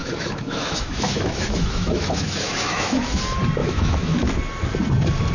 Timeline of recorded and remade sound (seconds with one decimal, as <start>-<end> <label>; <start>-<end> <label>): 0.0-3.2 remade; 3.2-3.6 recorded; 3.6-4.3 remade; 4.3-5.3 recorded